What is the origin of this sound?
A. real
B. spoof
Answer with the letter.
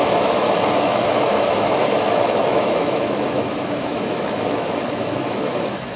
B